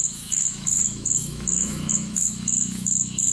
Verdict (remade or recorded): remade